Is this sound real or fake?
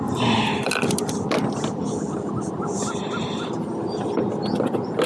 real